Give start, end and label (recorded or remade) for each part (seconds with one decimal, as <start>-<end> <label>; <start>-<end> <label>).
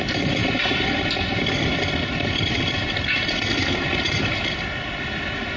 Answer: 0.0-0.4 recorded; 0.4-0.9 remade; 0.9-5.6 recorded